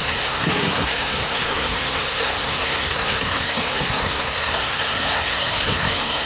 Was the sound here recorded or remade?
remade